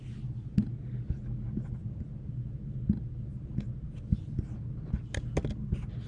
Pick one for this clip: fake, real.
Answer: real